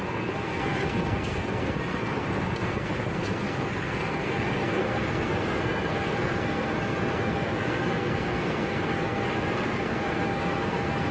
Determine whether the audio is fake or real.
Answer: fake